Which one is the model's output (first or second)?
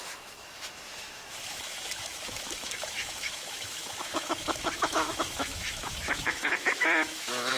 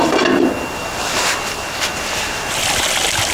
first